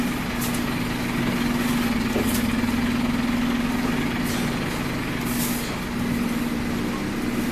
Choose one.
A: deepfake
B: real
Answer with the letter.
B